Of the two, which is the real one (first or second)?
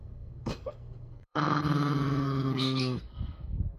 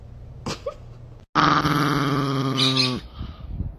second